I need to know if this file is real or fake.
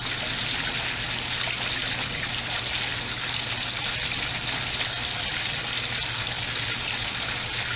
real